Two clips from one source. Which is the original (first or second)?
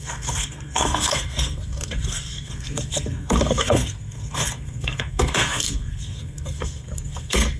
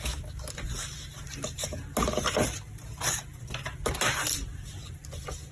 second